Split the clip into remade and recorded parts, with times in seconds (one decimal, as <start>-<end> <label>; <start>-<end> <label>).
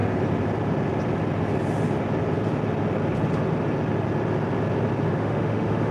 0.0-5.1 recorded; 5.1-5.9 remade